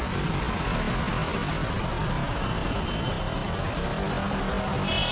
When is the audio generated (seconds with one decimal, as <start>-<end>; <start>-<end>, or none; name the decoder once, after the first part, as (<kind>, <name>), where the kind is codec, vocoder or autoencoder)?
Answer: none